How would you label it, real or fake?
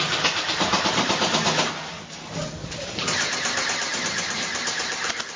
real